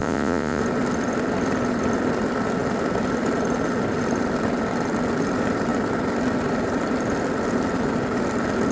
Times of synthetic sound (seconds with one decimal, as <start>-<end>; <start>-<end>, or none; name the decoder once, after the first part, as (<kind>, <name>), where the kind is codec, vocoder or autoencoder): 0.0-0.6 (vocoder, Vocos)